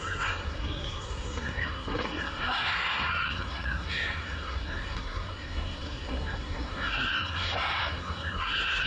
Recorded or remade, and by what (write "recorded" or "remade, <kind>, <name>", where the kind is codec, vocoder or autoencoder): remade, codec, SNAC